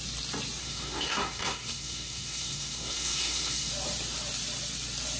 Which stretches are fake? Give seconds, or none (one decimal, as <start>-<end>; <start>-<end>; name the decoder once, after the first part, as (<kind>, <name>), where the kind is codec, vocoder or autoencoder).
0.6-3.7 (codec, SNAC)